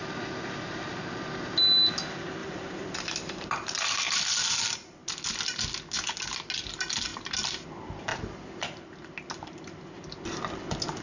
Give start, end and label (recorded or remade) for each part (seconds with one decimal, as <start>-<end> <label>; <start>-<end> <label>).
0.0-2.4 recorded; 2.4-4.2 remade; 4.2-7.1 recorded; 7.1-7.7 remade; 7.7-8.1 recorded; 8.1-8.9 remade; 8.9-11.0 recorded